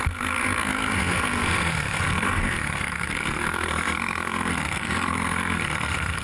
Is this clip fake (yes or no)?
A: yes